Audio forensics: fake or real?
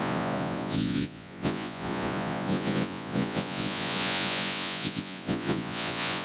fake